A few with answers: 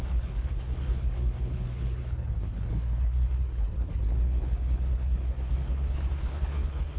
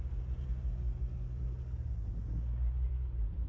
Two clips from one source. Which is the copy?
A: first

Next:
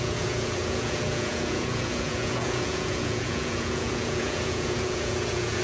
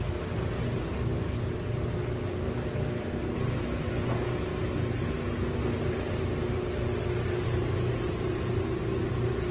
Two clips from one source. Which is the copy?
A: first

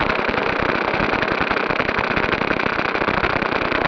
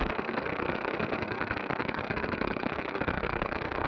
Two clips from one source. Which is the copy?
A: second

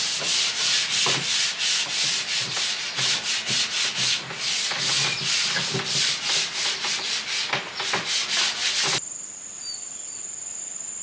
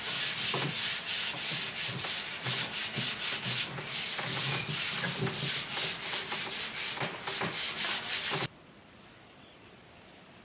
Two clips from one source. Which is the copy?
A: second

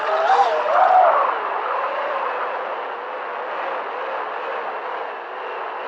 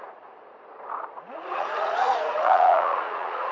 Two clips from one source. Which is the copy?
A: second